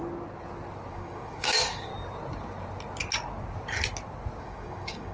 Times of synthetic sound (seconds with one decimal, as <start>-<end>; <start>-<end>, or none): 0.9-1.9; 4.4-5.1